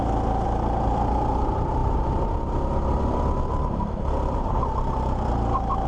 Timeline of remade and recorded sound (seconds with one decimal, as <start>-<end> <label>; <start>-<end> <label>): 0.0-5.9 recorded

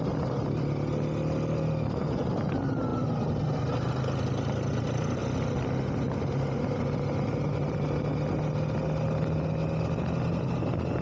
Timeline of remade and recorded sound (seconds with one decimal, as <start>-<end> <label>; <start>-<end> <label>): 0.0-11.0 recorded

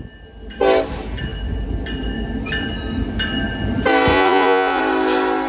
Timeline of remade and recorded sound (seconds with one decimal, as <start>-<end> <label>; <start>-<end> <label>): 0.0-4.1 recorded; 4.1-4.8 remade; 4.8-5.5 recorded

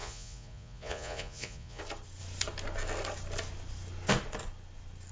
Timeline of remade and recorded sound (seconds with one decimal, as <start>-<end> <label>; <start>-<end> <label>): 0.0-1.8 remade; 1.8-5.1 recorded

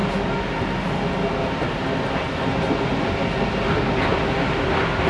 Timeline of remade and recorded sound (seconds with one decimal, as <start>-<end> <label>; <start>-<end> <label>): 0.0-5.1 recorded